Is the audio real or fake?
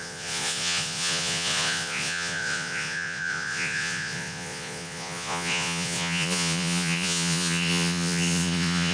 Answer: fake